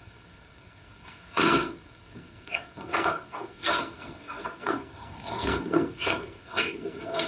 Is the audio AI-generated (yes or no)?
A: yes